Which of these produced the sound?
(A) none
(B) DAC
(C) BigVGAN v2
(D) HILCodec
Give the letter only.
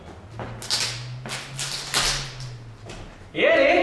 A